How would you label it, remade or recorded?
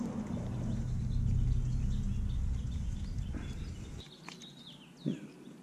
recorded